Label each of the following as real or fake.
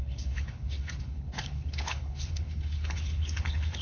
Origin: fake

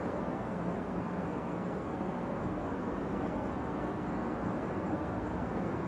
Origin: fake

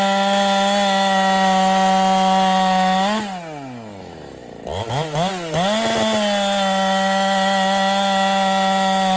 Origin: real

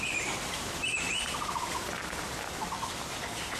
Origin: fake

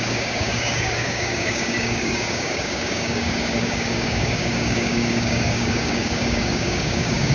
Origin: fake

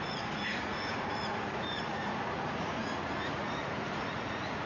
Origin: fake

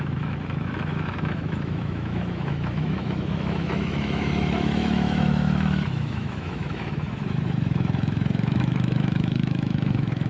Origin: fake